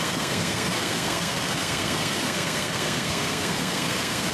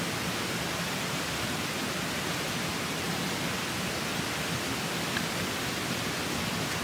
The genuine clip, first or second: second